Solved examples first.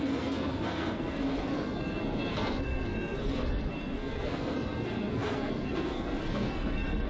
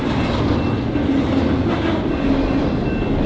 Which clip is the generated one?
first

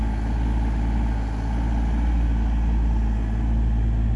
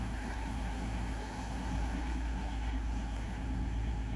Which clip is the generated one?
second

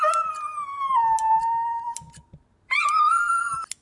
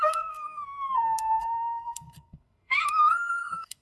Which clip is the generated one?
second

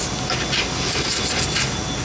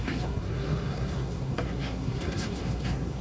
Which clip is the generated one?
second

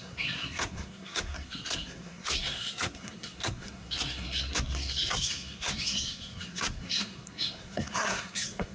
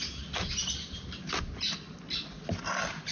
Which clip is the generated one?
first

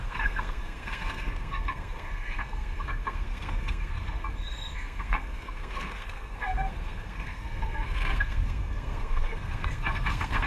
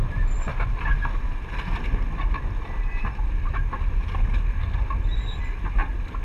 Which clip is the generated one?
first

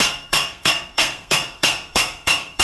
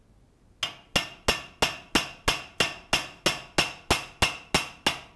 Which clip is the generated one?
first